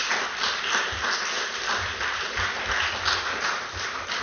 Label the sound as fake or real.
real